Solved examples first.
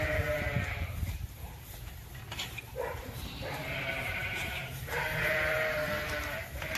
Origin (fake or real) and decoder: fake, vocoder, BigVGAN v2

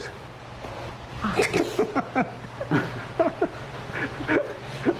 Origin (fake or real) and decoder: real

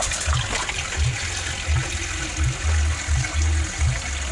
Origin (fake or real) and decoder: real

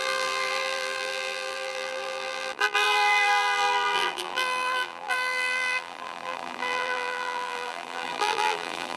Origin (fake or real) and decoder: fake, vocoder, BigVGAN v2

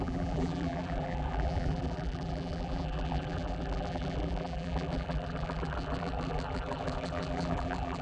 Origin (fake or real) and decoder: fake, vocoder, BigVGAN v2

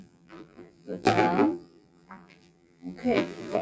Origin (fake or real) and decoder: fake, vocoder, BigVGAN v2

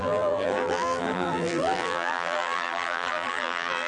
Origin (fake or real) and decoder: fake, vocoder, BigVGAN v2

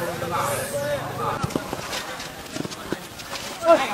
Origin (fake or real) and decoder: real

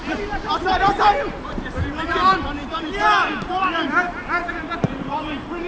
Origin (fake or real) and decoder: fake, vocoder, BigVGAN v2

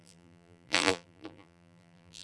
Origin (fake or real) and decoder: fake, vocoder, BigVGAN v2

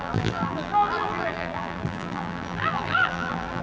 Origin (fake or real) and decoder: fake, vocoder, BigVGAN v2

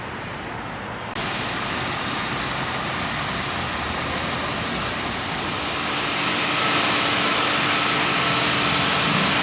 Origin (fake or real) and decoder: real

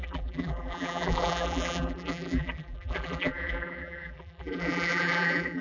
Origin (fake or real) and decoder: fake, vocoder, BigVGAN v2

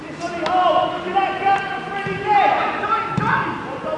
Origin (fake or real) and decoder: real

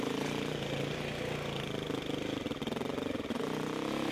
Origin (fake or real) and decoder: real